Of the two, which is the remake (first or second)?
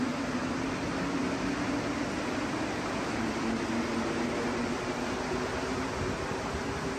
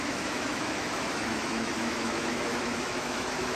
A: second